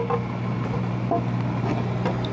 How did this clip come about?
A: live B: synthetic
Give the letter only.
A